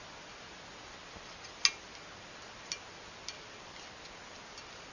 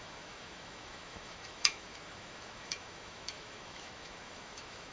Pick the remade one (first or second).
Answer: second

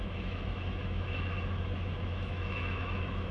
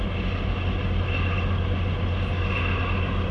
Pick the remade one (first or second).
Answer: first